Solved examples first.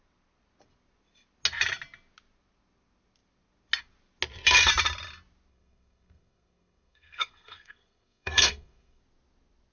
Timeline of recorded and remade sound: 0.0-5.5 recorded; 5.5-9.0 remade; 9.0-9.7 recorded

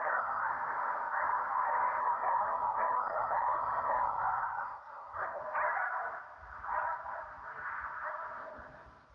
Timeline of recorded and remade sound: 0.0-0.5 remade; 0.5-2.0 recorded; 2.0-5.4 remade; 5.4-9.1 recorded